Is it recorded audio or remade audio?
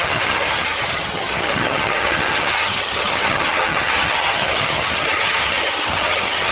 remade